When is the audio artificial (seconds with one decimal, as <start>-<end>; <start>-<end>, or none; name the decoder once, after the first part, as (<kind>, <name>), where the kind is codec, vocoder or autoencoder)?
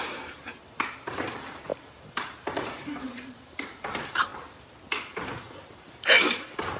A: 0.0-4.3 (vocoder, BigVGAN v2); 4.9-6.8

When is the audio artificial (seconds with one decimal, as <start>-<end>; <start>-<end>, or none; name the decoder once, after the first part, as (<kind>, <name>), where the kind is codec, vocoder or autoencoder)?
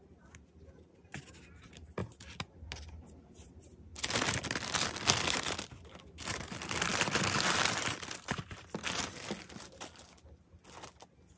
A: 6.9-9.4 (vocoder, BigVGAN v2)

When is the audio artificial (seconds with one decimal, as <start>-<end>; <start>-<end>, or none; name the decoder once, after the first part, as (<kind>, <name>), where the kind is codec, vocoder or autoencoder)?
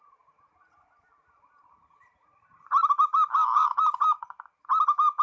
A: 1.2-4.3 (vocoder, BigVGAN v2)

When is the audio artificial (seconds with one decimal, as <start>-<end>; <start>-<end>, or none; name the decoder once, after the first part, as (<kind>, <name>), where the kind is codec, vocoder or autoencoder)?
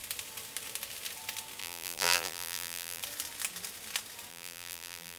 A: 1.6-3.0 (vocoder, BigVGAN v2); 4.3-5.2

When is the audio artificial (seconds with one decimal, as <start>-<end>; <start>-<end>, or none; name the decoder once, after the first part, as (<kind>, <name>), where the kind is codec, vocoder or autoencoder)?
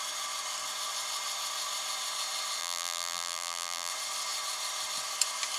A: 2.6-3.9 (vocoder, BigVGAN v2)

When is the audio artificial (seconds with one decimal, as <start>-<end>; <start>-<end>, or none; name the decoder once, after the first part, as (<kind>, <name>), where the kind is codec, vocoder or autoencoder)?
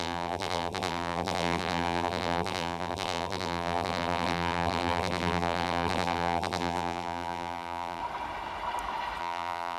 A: 0.0-8.0 (vocoder, BigVGAN v2); 9.2-9.8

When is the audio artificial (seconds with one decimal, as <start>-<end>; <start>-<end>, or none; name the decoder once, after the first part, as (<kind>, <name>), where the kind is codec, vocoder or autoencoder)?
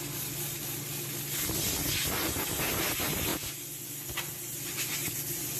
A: 5.0-5.6 (vocoder, BigVGAN v2)